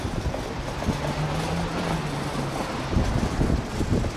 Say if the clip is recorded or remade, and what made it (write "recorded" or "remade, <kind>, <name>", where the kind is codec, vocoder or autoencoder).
recorded